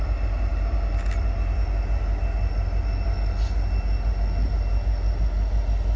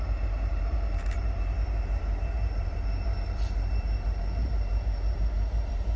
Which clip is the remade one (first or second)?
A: second